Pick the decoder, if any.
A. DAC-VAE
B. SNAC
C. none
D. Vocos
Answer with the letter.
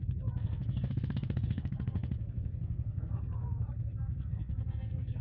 B